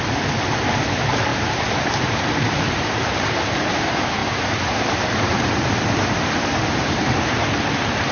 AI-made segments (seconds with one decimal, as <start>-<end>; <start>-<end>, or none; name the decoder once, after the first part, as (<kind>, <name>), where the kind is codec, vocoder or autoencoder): 1.3-3.8 (vocoder, BigVGAN v2); 4.2-7.5